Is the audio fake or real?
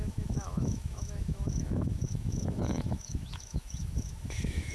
fake